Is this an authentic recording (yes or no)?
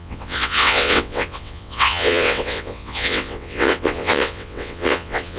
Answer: no